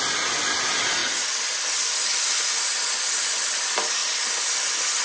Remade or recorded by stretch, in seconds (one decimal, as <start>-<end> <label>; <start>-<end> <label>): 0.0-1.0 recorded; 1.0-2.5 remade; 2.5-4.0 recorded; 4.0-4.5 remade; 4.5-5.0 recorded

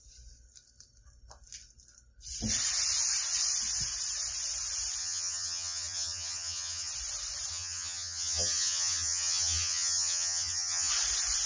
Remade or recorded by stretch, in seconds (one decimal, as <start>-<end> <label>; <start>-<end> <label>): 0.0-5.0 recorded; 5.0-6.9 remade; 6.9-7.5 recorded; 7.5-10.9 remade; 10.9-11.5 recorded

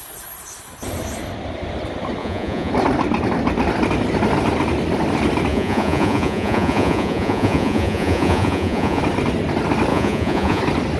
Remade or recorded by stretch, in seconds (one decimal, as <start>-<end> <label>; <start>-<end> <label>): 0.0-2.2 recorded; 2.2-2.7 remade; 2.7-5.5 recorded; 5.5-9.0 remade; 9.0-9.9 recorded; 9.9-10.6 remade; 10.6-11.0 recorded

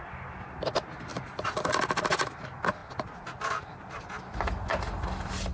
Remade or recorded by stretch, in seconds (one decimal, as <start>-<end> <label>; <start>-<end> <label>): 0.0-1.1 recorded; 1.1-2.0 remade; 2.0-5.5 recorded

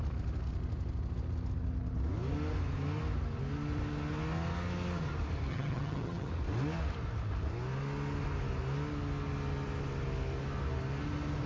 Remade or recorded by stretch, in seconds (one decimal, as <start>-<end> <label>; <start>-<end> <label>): 0.0-5.5 recorded; 5.5-6.3 remade; 6.3-11.5 recorded